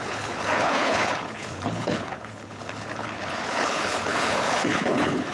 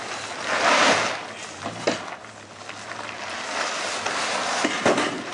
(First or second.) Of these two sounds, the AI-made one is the first